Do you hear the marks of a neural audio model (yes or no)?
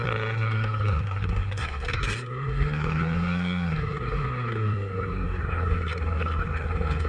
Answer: yes